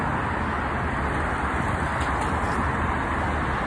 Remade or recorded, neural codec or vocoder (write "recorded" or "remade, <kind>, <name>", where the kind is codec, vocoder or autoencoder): recorded